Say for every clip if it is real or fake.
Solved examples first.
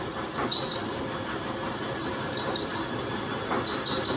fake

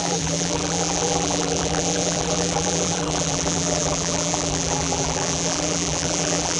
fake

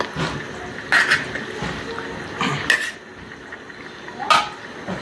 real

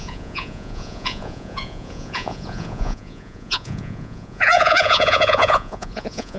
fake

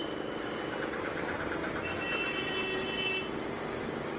real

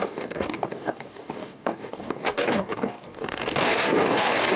fake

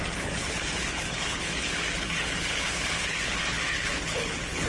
fake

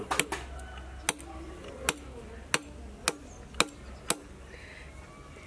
real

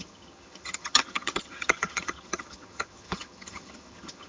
fake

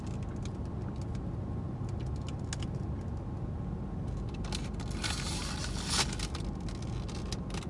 real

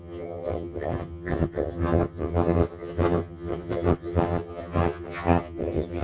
fake